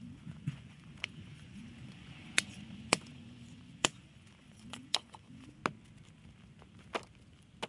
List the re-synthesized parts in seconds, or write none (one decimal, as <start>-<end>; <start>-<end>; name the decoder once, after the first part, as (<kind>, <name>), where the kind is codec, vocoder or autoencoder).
0.0-5.6 (vocoder, Vocos)